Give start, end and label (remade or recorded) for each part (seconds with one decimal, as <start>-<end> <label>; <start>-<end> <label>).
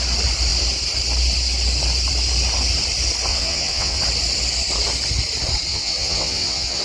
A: 0.0-3.3 recorded; 3.3-4.0 remade; 4.0-5.7 recorded; 5.7-6.8 remade